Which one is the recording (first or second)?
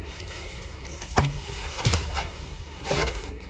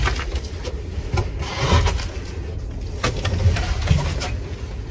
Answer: second